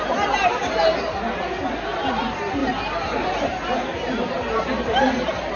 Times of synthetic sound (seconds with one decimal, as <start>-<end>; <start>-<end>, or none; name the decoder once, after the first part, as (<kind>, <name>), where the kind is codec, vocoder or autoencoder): none